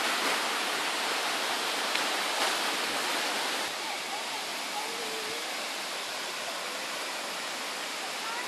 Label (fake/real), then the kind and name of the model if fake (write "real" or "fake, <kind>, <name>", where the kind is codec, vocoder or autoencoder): real